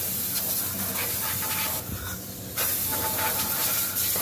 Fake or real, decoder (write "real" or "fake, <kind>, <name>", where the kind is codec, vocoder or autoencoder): real